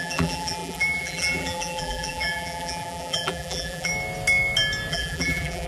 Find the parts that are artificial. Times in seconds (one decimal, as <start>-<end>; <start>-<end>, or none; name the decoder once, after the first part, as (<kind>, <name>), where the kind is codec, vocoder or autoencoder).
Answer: 0.0-3.9 (vocoder, BigVGAN v2); 4.9-5.7